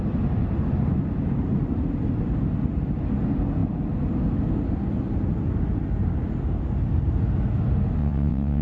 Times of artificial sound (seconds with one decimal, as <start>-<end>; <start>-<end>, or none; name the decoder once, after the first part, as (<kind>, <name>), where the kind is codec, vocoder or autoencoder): 8.0-8.6 (vocoder, WaveNeXt)